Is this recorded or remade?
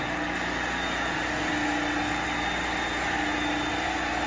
recorded